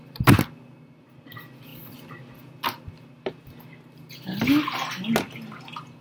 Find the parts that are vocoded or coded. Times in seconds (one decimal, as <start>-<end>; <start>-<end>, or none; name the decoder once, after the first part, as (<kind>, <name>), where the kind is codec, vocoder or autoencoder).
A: none

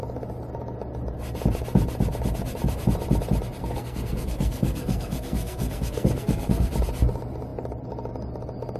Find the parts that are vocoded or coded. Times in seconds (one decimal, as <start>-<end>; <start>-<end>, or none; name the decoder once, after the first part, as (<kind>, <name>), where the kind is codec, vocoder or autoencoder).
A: 3.6-6.7 (codec, SNAC)